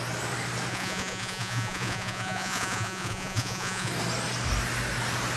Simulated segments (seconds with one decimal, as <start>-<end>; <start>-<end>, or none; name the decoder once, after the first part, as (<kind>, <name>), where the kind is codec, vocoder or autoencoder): 0.7-3.9 (vocoder, Vocos)